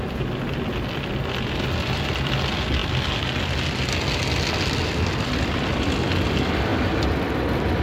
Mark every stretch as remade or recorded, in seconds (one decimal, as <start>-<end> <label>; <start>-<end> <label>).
0.0-7.8 recorded